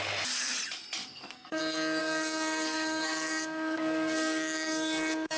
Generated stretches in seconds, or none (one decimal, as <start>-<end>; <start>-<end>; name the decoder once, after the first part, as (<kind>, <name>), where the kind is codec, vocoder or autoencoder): 1.0-1.6 (codec, SNAC); 2.0-5.4